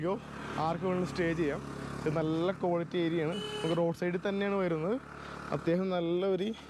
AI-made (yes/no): no